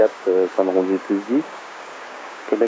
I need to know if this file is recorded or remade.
remade